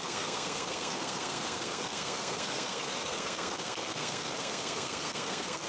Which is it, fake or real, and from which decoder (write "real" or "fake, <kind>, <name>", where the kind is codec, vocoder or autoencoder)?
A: fake, codec, SNAC